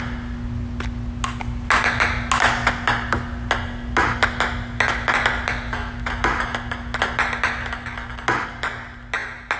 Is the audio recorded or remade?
recorded